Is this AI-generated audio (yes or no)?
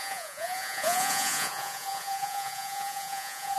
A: yes